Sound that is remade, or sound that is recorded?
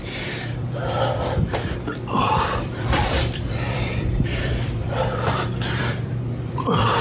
remade